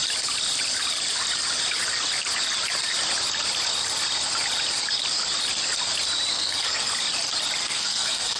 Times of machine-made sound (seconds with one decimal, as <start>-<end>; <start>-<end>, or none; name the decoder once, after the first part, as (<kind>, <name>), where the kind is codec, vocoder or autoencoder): 6.3-6.9 (codec, SNAC); 7.6-8.4